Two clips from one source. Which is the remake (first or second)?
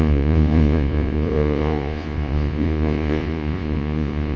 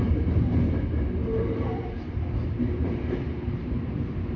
first